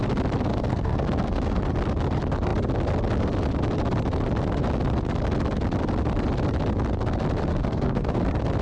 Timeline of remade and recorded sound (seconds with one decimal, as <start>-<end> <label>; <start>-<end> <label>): 0.0-0.5 recorded; 0.5-1.6 remade; 1.6-7.5 recorded; 7.5-8.2 remade; 8.2-8.6 recorded